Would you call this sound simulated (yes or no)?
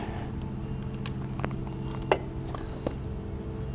no